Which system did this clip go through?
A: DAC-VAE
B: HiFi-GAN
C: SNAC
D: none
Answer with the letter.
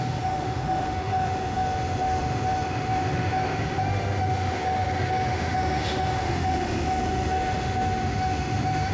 A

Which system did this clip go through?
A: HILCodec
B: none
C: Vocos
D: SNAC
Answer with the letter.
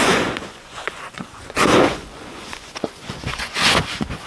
C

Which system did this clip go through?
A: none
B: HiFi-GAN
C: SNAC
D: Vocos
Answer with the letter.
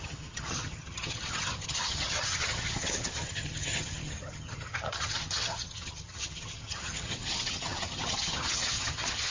B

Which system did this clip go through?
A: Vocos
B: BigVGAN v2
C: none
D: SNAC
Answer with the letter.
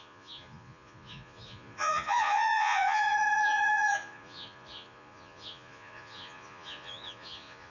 A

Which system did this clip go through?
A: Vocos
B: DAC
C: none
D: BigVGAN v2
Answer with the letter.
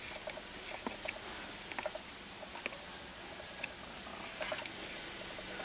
C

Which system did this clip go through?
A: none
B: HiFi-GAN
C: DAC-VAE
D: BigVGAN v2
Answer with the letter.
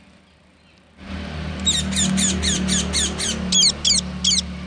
A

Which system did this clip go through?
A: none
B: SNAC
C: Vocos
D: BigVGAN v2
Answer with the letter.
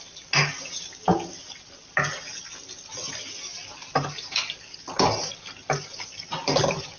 A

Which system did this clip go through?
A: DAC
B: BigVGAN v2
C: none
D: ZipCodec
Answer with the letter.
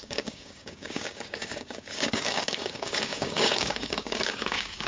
A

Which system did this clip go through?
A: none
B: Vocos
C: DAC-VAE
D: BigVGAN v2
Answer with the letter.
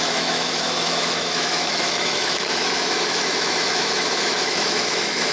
C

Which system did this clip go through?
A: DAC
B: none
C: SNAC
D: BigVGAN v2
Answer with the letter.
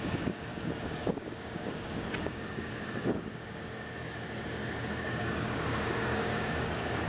A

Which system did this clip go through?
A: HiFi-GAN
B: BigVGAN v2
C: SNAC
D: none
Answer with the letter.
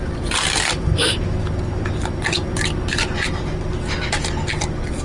B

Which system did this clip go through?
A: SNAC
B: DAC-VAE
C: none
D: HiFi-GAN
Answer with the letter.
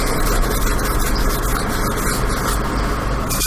C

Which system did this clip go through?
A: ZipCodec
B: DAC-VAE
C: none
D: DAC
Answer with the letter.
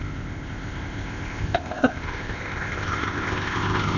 A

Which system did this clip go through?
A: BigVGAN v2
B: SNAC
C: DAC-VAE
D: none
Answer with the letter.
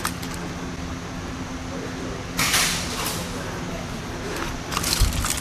D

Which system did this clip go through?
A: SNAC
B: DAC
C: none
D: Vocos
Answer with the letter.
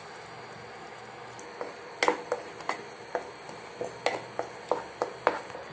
C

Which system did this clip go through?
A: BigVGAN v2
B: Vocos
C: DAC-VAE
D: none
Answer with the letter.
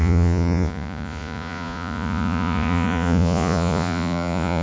B